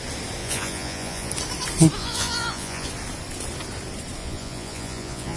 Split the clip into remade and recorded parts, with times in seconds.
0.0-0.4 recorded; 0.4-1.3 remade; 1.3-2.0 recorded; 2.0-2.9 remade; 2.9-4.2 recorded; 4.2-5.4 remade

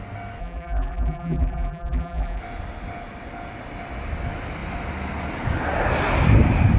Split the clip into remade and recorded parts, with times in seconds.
0.0-0.4 recorded; 0.4-2.4 remade; 2.4-6.8 recorded

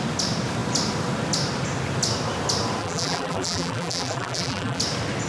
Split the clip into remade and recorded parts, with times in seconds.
0.0-2.8 recorded; 2.8-4.8 remade; 4.8-5.3 recorded

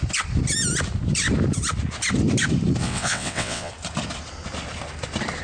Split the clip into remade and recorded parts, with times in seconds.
0.0-2.8 recorded; 2.8-3.7 remade; 3.7-5.4 recorded